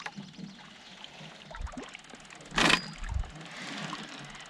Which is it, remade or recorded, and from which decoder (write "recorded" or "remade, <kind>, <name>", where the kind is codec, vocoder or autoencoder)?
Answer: recorded